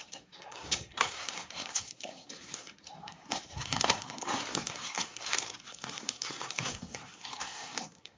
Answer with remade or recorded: remade